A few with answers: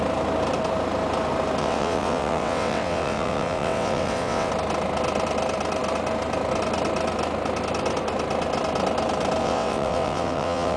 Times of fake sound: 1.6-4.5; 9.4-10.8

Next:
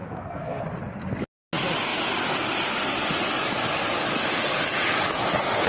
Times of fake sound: 0.0-0.6

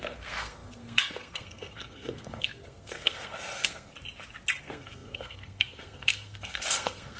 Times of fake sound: 0.0-3.9; 4.6-7.2

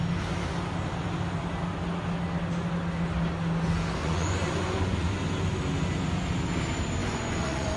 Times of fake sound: 4.0-5.1; 7.0-7.8

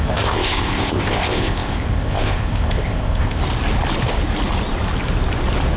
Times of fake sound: 0.0-3.4

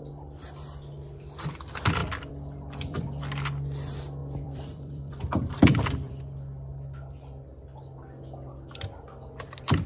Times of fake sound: 2.0-3.2; 4.2-6.2